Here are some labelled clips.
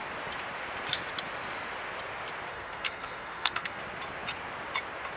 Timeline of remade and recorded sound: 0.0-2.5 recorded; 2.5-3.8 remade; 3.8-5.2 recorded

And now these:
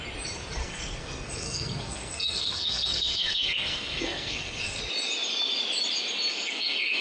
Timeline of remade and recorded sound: 0.0-0.6 recorded; 0.6-4.8 remade; 4.8-6.3 recorded; 6.3-7.0 remade